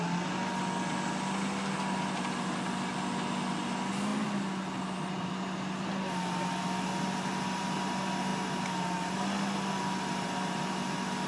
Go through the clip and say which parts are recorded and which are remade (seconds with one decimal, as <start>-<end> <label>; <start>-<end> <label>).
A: 0.0-11.3 recorded